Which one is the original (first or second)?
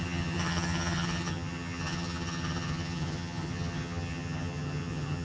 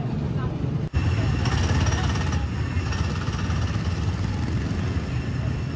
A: second